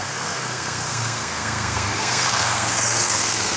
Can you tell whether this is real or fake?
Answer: fake